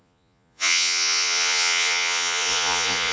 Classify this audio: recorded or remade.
remade